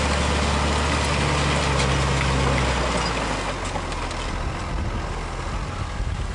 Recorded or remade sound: recorded